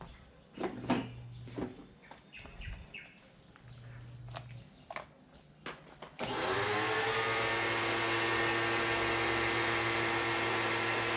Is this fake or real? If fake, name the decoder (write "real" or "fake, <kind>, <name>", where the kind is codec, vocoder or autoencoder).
real